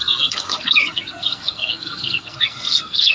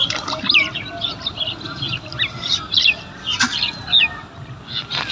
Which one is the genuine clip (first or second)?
second